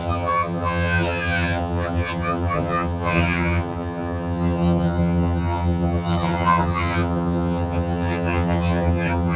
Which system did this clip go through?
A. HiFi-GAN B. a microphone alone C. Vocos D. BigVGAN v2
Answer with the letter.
A